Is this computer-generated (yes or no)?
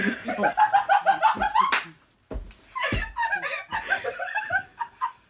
no